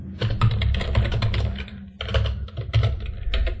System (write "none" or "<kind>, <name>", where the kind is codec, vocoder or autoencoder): none